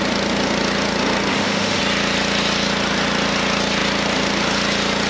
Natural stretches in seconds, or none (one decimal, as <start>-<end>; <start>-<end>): 0.0-1.3; 1.8-5.1